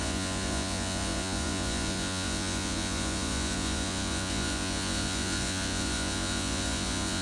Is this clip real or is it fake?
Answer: fake